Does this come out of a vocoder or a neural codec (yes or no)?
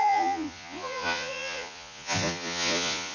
yes